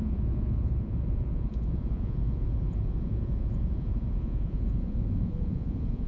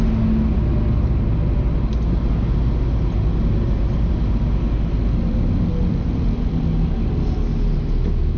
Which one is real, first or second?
second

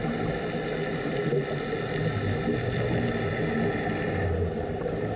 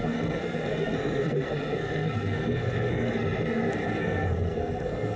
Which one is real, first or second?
first